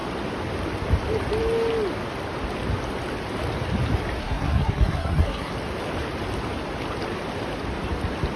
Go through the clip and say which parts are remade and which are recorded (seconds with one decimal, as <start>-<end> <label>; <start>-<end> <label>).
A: 0.0-4.2 recorded; 4.2-5.5 remade; 5.5-8.4 recorded